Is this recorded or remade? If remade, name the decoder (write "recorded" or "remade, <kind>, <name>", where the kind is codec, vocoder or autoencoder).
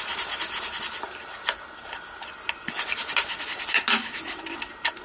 recorded